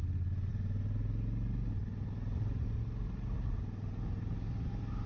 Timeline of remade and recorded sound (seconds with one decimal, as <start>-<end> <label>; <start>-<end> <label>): 0.0-5.1 recorded